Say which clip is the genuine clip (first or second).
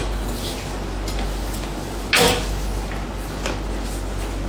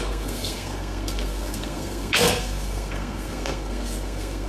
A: first